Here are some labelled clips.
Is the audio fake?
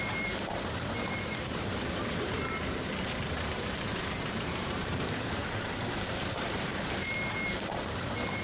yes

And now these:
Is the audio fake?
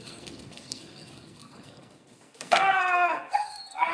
yes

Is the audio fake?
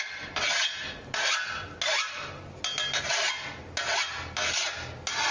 no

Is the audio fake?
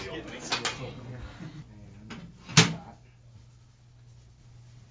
no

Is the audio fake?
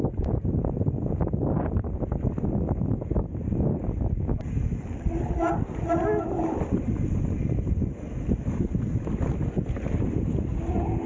no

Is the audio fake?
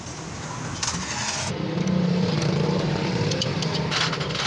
no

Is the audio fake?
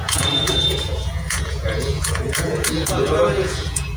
yes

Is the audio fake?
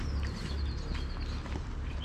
no